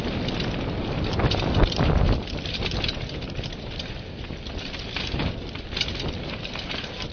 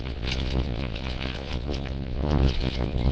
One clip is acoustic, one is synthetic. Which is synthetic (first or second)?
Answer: second